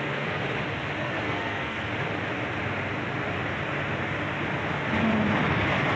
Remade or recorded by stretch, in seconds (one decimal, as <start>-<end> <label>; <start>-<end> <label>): 0.0-0.4 remade; 0.4-1.0 recorded; 1.0-1.9 remade; 1.9-5.5 recorded; 5.5-6.0 remade